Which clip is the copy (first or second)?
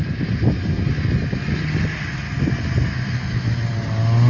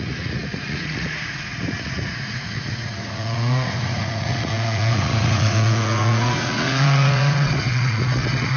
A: second